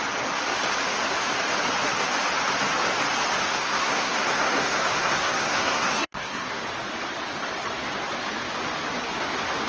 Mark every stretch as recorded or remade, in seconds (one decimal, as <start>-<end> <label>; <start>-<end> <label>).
0.0-3.4 recorded; 3.4-6.6 remade; 6.6-9.7 recorded